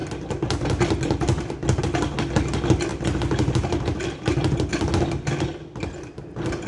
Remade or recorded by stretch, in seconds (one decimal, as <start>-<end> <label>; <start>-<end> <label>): 0.0-6.7 recorded